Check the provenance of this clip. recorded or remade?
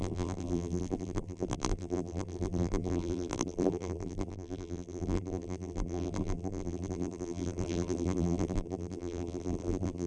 remade